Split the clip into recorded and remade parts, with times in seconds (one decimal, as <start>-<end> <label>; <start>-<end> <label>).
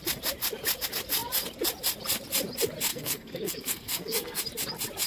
0.0-2.9 recorded; 2.9-4.4 remade; 4.4-5.1 recorded